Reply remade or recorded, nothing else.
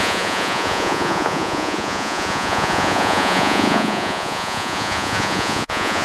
remade